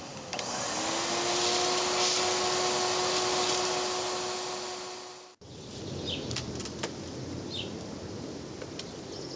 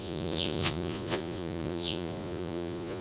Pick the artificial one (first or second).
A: second